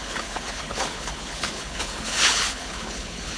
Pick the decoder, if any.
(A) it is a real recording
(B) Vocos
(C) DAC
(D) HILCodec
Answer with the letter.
D